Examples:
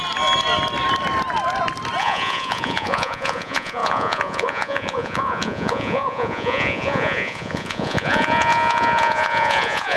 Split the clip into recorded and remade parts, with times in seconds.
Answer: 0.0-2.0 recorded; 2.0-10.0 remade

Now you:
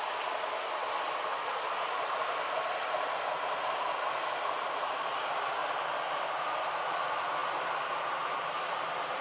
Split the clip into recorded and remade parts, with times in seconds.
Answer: 0.0-9.2 recorded